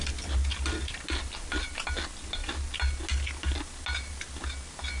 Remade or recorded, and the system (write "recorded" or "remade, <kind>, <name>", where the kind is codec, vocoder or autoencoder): recorded